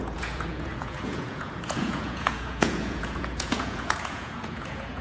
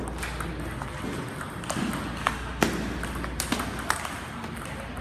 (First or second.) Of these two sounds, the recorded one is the second